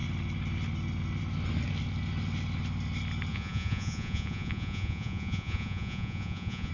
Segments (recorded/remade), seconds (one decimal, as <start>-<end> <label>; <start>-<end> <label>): 0.0-3.3 recorded; 3.3-6.7 remade